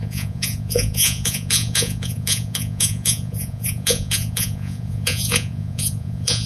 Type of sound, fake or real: fake